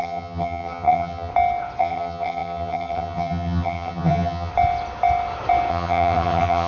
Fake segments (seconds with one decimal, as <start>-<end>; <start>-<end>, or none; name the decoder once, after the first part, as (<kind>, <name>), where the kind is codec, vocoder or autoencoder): 0.0-1.3 (vocoder, HiFi-GAN); 1.8-4.5; 5.7-6.7